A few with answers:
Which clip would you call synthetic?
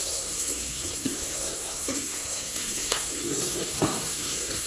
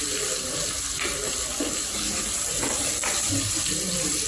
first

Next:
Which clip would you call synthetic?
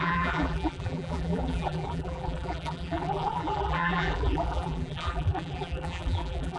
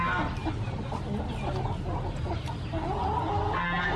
first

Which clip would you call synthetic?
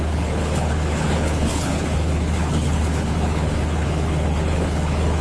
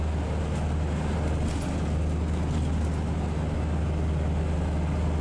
first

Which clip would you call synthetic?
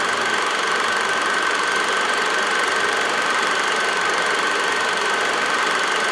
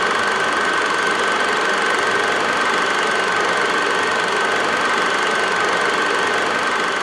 first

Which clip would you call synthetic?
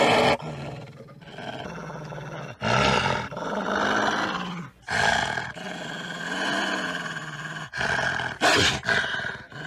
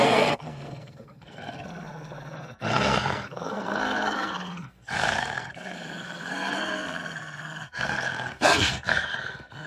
second